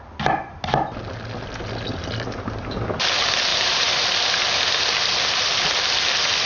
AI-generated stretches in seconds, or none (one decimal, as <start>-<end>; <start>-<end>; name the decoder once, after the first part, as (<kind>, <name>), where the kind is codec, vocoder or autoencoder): 3.5-4.1 (vocoder, BigVGAN v2)